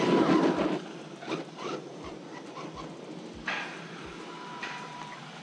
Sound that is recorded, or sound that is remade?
remade